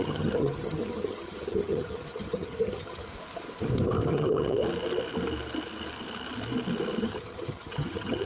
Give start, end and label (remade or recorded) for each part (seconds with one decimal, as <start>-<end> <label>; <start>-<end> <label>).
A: 0.0-3.1 remade; 3.1-4.1 recorded; 4.1-4.6 remade; 4.6-7.0 recorded; 7.0-8.3 remade